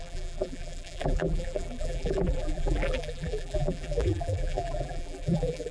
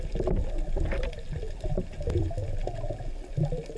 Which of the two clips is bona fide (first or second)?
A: second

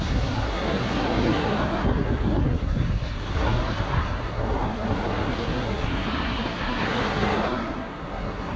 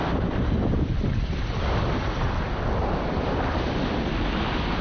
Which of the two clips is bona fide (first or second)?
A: second